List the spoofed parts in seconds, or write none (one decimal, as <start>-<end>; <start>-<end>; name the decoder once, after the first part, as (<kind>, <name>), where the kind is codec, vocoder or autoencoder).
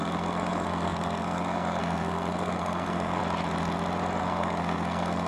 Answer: 0.0-3.2 (codec, SNAC); 4.2-5.3